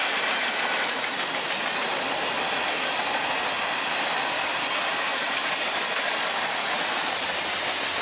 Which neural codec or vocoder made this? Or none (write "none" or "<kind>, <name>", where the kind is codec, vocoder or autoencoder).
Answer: vocoder, BigVGAN v2